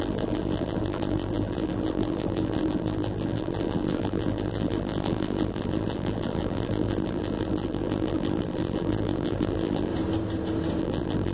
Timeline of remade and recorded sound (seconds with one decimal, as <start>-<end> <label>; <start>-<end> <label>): 0.0-9.9 remade; 9.9-10.8 recorded; 10.8-11.3 remade